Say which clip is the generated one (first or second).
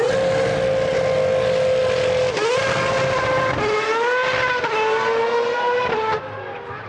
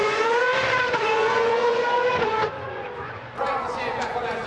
second